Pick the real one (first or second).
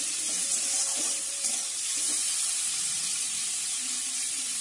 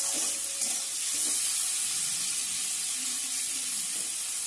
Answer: second